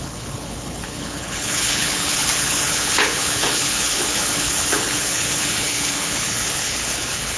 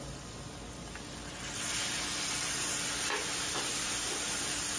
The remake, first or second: first